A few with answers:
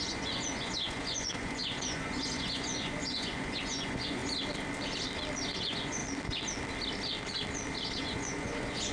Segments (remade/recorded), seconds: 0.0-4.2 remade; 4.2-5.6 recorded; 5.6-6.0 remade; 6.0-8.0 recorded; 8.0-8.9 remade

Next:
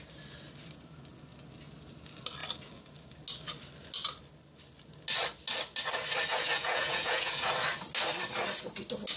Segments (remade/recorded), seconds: 0.0-6.3 recorded; 6.3-7.5 remade; 7.5-9.2 recorded

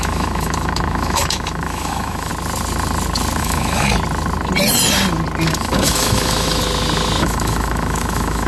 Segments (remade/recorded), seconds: 0.0-2.3 remade; 2.3-3.4 recorded; 3.4-3.9 remade; 3.9-5.5 recorded; 5.5-6.6 remade; 6.6-7.2 recorded; 7.2-8.5 remade